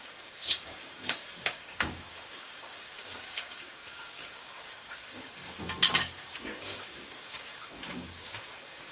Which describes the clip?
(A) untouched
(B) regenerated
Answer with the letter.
B